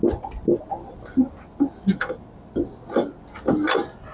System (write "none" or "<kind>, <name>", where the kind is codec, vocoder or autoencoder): none